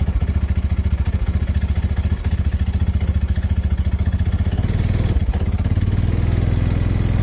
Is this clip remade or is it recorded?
recorded